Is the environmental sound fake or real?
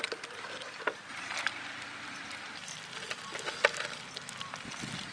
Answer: real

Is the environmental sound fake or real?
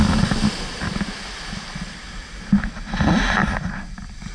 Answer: real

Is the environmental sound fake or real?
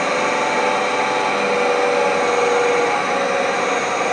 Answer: real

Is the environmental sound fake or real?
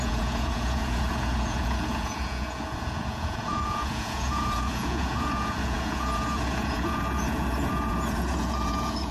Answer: fake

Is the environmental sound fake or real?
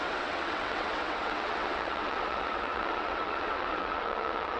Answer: fake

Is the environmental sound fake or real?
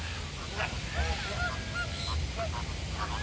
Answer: real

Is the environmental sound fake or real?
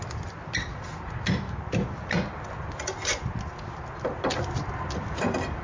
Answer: real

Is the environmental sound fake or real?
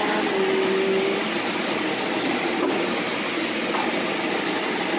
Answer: real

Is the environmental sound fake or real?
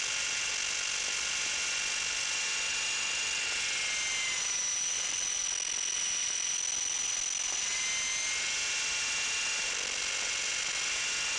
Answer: real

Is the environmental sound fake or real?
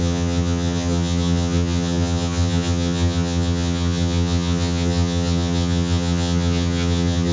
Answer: fake